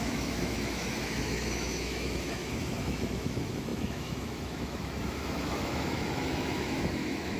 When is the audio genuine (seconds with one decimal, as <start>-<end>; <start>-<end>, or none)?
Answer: none